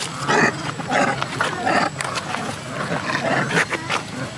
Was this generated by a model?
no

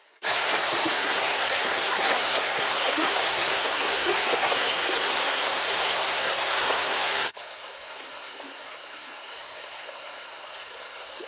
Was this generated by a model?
yes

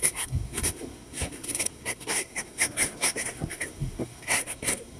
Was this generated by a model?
yes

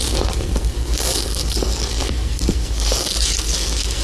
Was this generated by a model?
yes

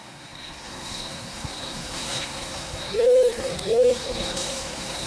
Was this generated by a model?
yes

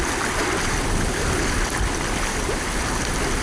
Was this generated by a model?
no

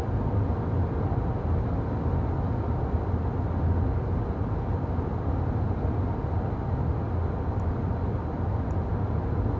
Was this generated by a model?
no